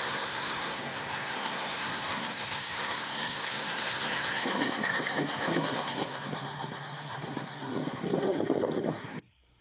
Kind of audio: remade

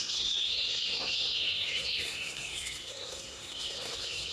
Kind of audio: remade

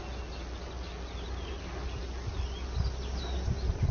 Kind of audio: recorded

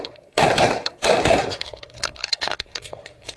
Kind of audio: remade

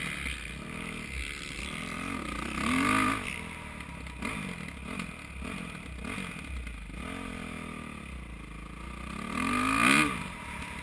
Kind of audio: recorded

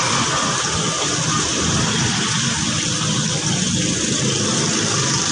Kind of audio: recorded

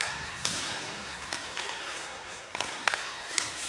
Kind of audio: remade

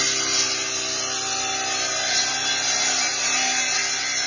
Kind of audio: recorded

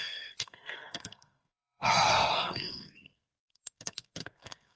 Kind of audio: remade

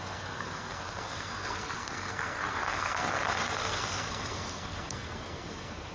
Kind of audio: remade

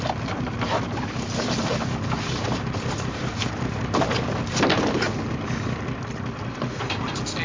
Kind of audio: recorded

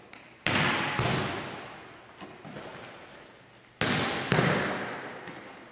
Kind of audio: recorded